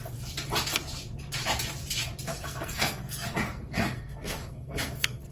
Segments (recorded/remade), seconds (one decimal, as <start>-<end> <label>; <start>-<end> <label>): 0.0-2.3 recorded; 2.3-5.3 remade